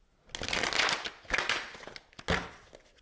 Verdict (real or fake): real